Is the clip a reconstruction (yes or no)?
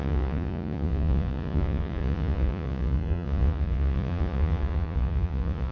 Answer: yes